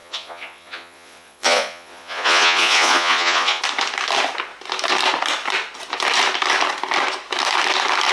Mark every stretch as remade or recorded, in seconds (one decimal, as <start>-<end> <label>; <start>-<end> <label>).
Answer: 0.0-3.6 remade; 3.6-8.1 recorded